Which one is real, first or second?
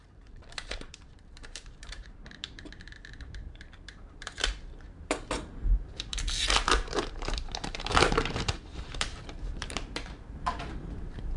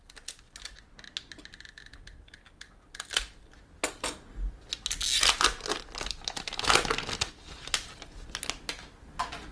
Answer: second